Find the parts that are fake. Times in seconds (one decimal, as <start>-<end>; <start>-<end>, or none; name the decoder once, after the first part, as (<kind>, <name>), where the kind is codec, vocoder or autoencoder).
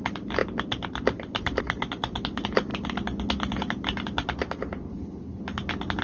4.9-5.4 (codec, HILCodec)